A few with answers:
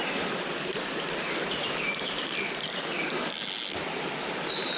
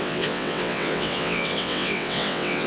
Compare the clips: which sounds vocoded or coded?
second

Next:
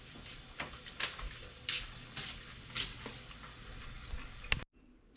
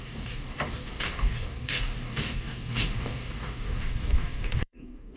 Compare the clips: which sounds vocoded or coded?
second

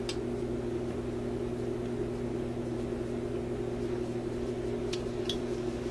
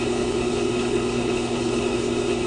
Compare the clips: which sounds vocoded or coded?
second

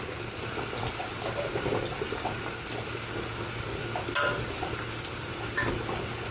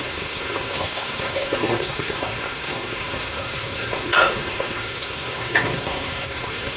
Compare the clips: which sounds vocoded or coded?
second